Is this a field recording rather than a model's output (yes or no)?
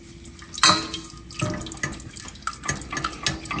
yes